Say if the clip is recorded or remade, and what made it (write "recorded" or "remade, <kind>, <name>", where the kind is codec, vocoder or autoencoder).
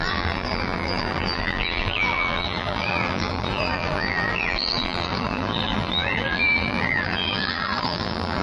remade, vocoder, BigVGAN v2